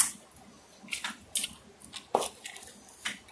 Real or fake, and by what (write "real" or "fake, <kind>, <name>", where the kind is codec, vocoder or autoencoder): real